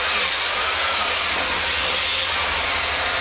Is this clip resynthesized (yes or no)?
no